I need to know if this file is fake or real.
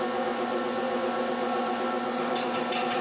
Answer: real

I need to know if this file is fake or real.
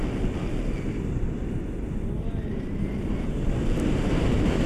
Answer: real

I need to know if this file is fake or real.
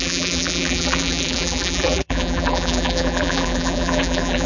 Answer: fake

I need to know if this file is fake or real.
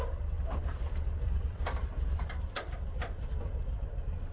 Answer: fake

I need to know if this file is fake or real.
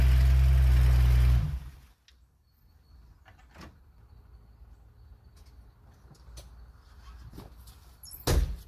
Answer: real